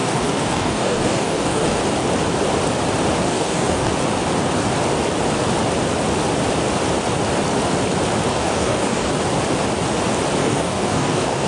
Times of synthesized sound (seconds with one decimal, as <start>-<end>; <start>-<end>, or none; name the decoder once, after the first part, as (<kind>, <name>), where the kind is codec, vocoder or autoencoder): 0.0-1.8 (codec, DAC); 3.3-3.9; 8.3-9.1; 10.4-11.5